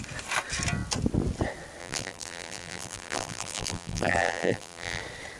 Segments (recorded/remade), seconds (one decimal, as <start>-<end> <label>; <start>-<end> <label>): 0.0-1.8 recorded; 1.8-5.0 remade; 5.0-5.4 recorded